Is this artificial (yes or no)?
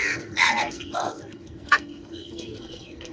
yes